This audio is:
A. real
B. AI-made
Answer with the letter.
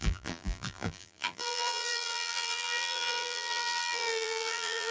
B